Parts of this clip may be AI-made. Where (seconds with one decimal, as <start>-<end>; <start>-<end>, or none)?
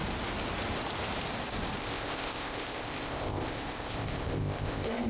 1.8-5.1